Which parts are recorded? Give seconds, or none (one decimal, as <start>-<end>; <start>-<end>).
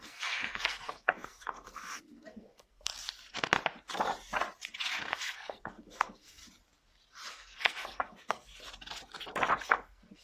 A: 2.9-5.0; 6.4-7.3; 8.5-9.6